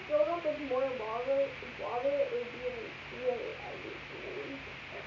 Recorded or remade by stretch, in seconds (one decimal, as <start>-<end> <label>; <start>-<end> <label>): 0.0-5.1 recorded